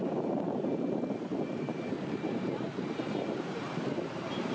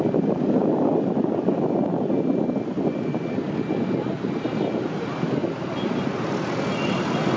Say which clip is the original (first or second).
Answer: second